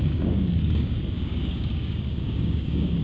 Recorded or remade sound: remade